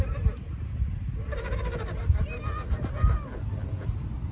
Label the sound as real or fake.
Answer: real